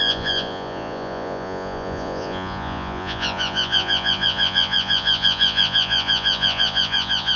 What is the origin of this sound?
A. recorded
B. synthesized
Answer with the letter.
B